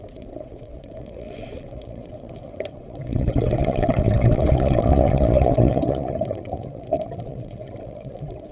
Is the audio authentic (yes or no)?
no